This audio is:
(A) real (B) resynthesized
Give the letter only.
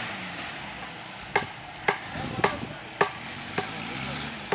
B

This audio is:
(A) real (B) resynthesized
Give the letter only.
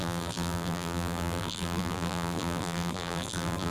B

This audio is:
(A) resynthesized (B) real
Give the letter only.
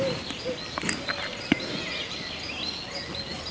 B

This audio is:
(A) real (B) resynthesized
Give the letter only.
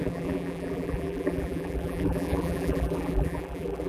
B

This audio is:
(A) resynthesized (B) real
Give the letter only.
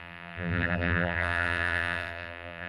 A